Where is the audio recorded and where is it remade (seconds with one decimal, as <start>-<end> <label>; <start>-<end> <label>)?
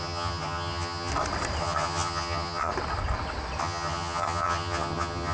0.0-1.1 remade; 1.1-1.6 recorded; 1.6-2.7 remade; 2.7-3.6 recorded; 3.6-5.3 remade